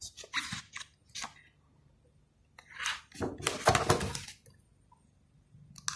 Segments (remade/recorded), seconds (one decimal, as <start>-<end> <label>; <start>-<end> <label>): 0.0-6.0 recorded